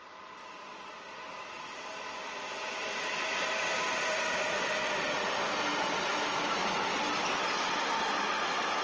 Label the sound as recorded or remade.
recorded